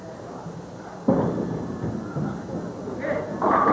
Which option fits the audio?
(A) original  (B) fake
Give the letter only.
A